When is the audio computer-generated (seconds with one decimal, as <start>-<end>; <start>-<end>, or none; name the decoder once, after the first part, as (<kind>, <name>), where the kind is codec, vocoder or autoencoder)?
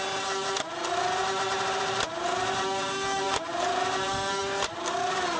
1.2-4.4 (vocoder, BigVGAN v2)